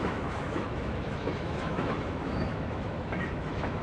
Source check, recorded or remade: remade